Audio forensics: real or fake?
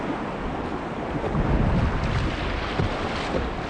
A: real